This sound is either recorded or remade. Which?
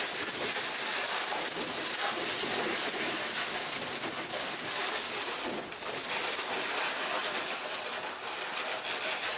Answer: recorded